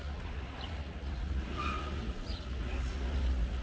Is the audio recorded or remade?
remade